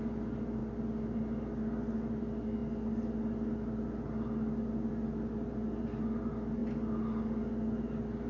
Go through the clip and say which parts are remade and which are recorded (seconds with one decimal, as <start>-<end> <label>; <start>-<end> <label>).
0.0-8.3 recorded